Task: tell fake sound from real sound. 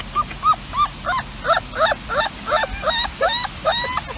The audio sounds real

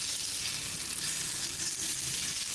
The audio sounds real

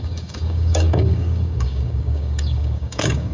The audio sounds fake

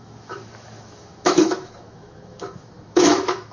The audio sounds fake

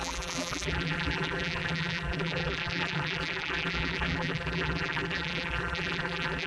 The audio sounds fake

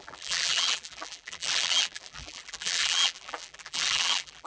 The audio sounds fake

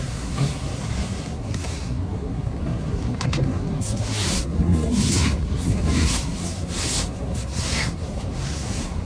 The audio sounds fake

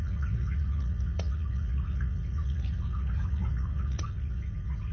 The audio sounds fake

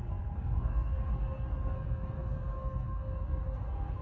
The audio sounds fake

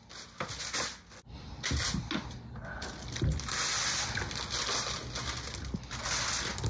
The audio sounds real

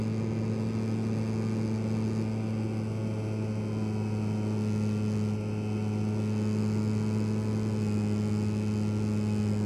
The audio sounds real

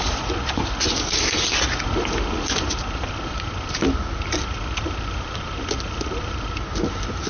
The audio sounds real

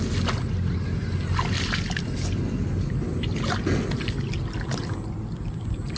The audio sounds real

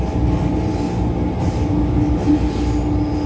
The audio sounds real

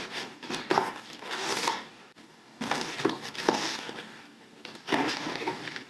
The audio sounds fake